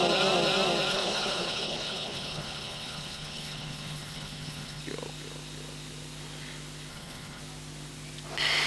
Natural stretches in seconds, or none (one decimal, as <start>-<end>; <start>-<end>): 0.0-0.9; 4.8-6.9; 7.4-8.7